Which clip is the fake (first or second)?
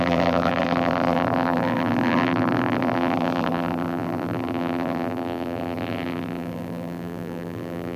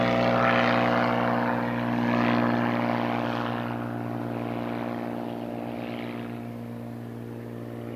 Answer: first